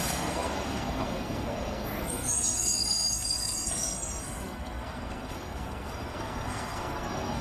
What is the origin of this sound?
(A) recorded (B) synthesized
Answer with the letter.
B